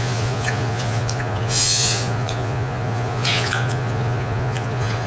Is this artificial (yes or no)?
yes